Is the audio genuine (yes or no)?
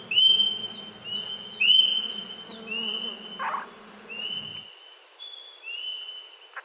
yes